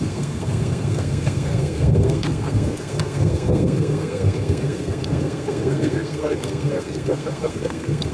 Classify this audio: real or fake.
fake